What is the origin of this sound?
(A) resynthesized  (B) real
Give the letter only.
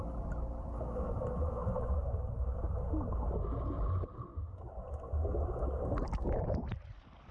B